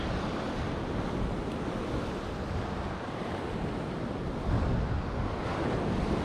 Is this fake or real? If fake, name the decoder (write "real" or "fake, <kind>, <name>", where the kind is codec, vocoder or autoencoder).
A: real